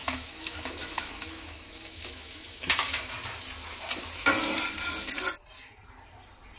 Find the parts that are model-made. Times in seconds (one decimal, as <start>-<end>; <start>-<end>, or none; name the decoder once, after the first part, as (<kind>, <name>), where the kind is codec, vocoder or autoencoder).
0.0-3.1 (autoencoder, DAC-VAE)